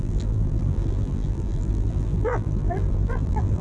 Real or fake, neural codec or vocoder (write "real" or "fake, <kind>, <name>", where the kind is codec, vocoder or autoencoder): fake, vocoder, BigVGAN v2